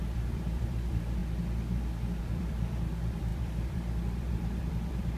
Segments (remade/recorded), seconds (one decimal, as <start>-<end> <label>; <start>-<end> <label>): 0.0-1.2 remade; 1.2-2.2 recorded; 2.2-5.2 remade